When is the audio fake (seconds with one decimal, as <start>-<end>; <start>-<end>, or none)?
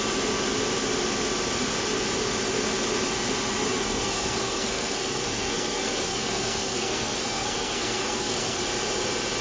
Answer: 3.7-8.6